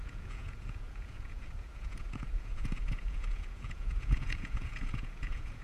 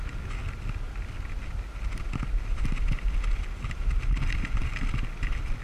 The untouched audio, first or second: second